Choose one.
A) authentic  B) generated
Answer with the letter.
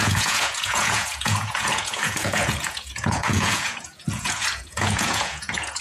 B